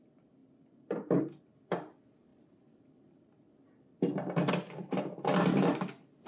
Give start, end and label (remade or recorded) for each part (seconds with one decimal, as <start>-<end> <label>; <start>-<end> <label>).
0.0-2.3 recorded; 2.3-4.5 remade; 4.5-6.3 recorded